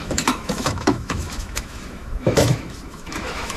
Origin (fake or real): fake